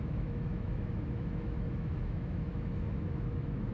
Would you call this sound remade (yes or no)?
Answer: yes